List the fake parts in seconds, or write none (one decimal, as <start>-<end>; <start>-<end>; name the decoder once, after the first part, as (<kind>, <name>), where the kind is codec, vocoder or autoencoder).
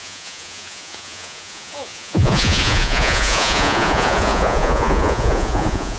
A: 0.0-6.0 (vocoder, Vocos)